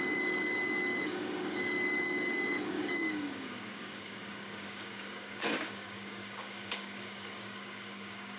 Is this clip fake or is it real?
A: fake